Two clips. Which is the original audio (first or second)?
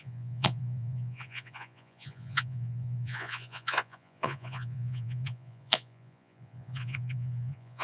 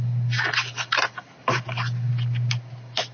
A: second